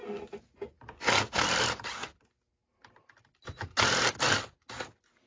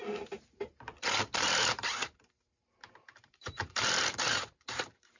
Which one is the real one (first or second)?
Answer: first